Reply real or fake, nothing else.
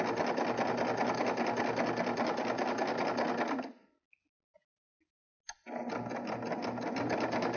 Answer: real